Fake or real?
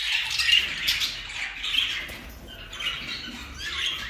real